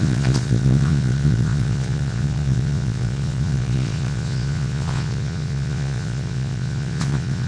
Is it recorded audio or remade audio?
remade